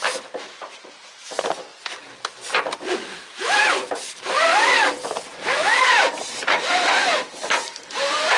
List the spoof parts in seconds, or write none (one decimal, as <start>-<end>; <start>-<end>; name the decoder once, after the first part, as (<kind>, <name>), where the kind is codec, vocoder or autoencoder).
0.0-1.7 (vocoder, BigVGAN v2); 2.6-8.4

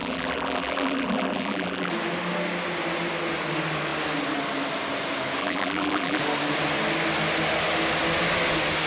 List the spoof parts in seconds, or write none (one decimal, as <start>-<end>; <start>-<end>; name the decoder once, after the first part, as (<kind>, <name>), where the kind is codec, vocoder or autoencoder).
0.0-1.9 (vocoder, BigVGAN v2); 5.4-6.2

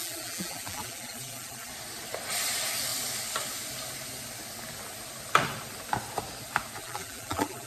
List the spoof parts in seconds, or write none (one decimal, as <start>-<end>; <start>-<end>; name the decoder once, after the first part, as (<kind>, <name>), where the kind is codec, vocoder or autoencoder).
0.0-1.7 (vocoder, BigVGAN v2); 6.8-7.7